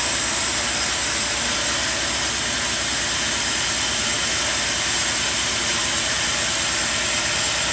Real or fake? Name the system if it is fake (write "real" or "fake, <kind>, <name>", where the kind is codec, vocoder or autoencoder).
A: real